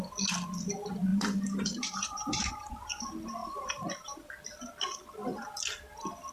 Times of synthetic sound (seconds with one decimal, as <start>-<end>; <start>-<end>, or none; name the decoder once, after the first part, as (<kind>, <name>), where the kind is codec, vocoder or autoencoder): 1.1-2.5 (vocoder, BigVGAN v2); 3.4-4.3